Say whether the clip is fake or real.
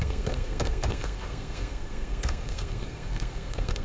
fake